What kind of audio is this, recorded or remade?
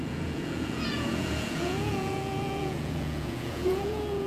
remade